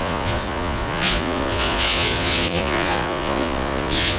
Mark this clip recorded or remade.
remade